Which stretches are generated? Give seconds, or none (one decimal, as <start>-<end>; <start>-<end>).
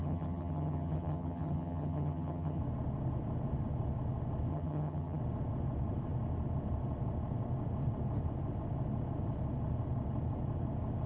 0.0-2.6; 4.5-5.2